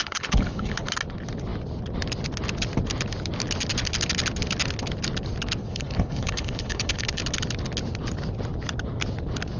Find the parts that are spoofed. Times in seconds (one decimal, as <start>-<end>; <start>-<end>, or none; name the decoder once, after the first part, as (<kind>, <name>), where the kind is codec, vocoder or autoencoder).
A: 0.0-0.9 (codec, HILCodec); 5.6-7.2